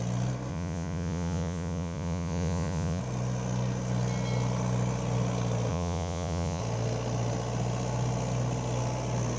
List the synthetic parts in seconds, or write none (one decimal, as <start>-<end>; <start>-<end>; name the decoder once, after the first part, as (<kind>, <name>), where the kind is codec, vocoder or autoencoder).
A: 0.5-3.0 (vocoder, Vocos); 5.7-6.6

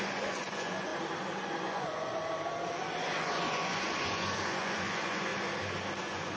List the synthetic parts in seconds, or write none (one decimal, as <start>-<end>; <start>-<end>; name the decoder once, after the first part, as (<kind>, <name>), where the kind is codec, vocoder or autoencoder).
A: 0.0-0.9 (vocoder, Vocos); 1.6-2.2; 3.0-5.3; 6.0-6.4

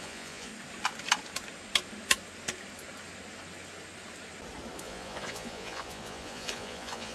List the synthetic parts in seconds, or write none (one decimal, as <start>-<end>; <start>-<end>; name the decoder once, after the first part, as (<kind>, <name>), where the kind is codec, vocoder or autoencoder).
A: 0.0-0.5 (vocoder, Vocos); 4.8-7.1

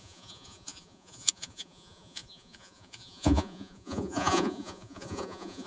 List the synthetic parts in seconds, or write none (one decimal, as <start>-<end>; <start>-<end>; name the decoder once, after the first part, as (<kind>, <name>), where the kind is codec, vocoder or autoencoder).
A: 0.0-5.7 (vocoder, Vocos)

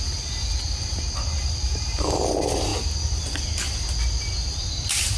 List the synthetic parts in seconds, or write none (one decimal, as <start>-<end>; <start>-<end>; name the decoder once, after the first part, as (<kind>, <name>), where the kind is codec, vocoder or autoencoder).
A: none

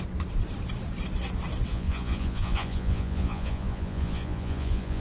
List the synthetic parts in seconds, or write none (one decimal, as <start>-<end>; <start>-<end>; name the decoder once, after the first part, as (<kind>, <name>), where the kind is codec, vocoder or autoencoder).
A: 1.7-5.0 (vocoder, Vocos)

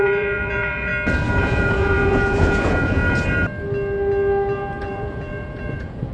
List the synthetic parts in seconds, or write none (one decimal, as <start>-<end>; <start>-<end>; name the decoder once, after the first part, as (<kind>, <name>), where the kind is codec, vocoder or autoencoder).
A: 0.0-0.9 (vocoder, Vocos); 1.4-3.0; 4.8-6.1

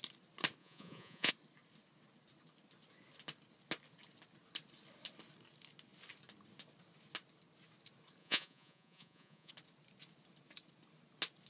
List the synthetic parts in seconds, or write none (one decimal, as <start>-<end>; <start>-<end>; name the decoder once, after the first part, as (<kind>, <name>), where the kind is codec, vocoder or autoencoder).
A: 0.6-1.3 (vocoder, Vocos); 8.2-9.5